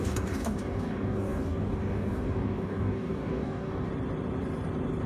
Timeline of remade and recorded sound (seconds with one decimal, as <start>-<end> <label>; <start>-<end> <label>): 0.0-3.9 remade; 3.9-5.1 recorded